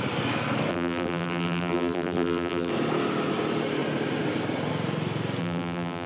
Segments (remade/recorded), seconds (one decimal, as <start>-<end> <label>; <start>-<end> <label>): 0.0-0.7 recorded; 0.7-2.7 remade; 2.7-5.4 recorded; 5.4-6.1 remade